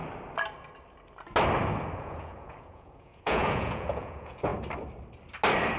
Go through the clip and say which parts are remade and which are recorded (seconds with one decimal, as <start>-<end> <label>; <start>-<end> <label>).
0.0-2.0 recorded; 2.0-4.5 remade; 4.5-5.8 recorded